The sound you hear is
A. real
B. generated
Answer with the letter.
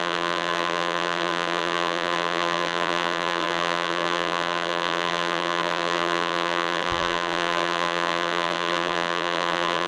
B